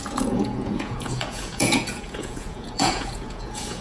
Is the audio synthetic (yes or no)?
yes